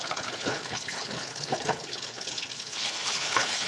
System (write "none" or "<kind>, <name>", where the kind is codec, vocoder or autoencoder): codec, HILCodec